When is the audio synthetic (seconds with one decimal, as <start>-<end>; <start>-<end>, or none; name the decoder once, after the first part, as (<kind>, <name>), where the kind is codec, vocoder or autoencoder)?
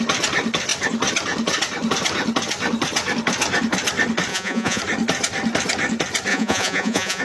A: 4.3-4.8 (vocoder, Vocos); 6.3-7.2